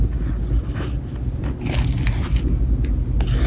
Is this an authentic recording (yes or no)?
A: yes